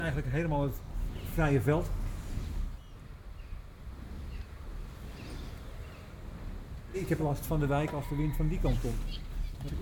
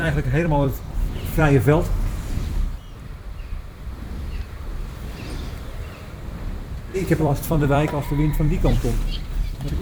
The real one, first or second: first